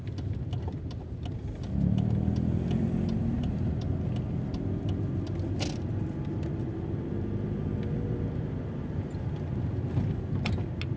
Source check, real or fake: real